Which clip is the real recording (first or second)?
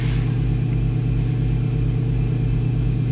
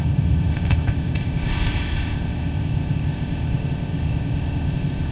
first